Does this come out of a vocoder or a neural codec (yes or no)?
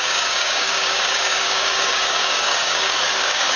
yes